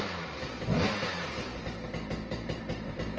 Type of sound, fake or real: fake